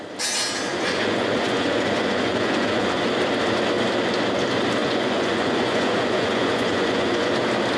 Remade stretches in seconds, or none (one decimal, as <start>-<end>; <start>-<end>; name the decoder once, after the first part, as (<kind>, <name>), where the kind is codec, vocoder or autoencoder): 0.7-3.1 (vocoder, Vocos); 4.8-7.3

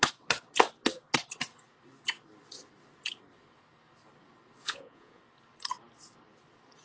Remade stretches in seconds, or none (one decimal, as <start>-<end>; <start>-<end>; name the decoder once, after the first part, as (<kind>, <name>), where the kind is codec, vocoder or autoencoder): 4.6-5.2 (vocoder, Vocos)